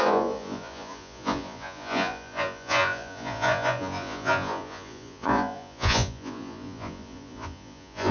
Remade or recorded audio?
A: remade